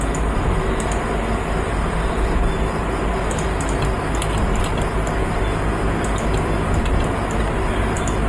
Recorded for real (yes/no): yes